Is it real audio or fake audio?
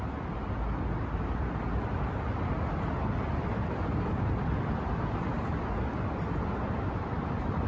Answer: real